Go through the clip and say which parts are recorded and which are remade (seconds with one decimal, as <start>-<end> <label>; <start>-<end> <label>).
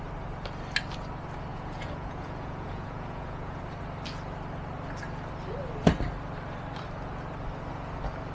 0.0-1.5 recorded; 1.5-3.6 remade; 3.6-8.3 recorded